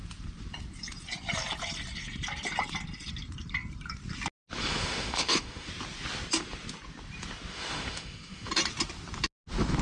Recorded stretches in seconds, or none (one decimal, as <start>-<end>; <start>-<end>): 0.0-4.6; 5.7-7.5; 8.5-9.8